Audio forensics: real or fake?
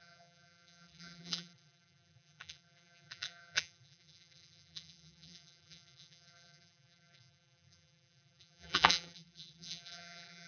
fake